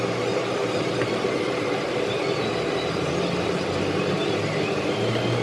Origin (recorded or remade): recorded